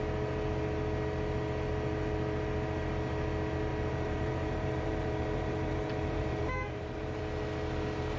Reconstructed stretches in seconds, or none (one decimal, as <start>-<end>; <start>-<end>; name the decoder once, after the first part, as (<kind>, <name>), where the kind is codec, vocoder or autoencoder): 3.7-7.2 (vocoder, BigVGAN v2)